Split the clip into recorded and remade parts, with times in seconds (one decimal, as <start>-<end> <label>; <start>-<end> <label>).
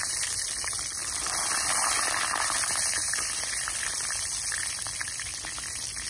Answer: 0.0-6.1 recorded